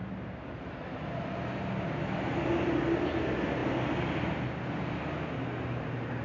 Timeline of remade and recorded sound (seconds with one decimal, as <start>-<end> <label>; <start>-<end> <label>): 0.0-6.2 recorded